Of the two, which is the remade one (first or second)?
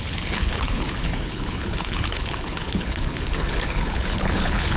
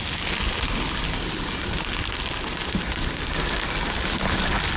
first